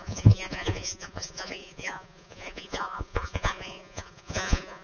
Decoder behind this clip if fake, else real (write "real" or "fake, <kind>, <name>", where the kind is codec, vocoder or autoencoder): fake, vocoder, Vocos